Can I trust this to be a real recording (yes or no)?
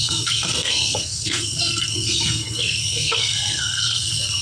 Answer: no